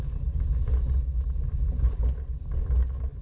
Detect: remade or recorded recorded